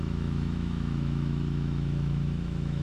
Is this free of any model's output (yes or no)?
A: no